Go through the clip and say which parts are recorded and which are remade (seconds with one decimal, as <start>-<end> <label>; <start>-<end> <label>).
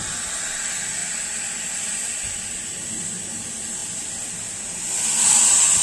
0.0-5.8 recorded